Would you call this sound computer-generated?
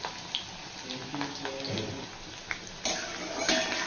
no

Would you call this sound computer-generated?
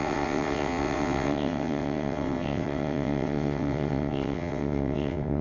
yes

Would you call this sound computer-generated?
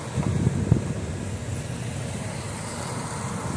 no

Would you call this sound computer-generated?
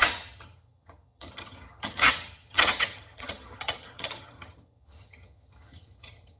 yes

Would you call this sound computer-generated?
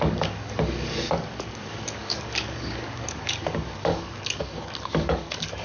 yes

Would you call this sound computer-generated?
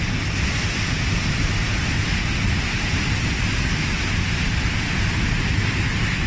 no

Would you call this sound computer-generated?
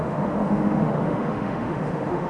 yes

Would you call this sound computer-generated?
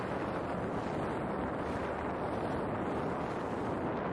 no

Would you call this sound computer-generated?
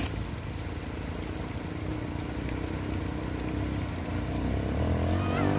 no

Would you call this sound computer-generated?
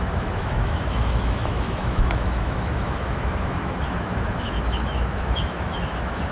yes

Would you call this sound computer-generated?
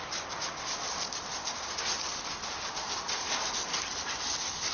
no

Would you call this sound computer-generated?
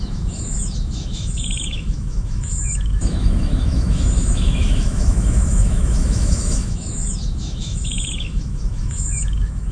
yes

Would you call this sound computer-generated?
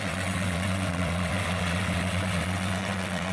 yes